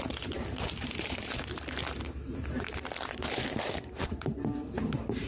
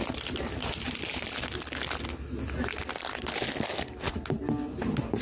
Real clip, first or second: second